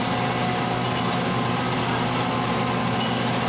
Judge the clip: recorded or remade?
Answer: recorded